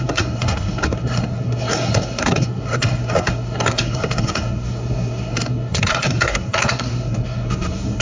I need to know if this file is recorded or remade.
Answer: remade